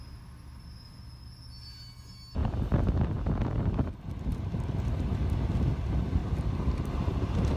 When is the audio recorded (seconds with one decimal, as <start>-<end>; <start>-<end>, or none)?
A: 0.0-7.6